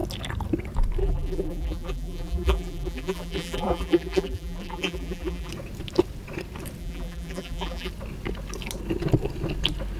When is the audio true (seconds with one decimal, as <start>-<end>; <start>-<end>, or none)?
0.0-1.0; 5.5-6.8; 7.9-10.0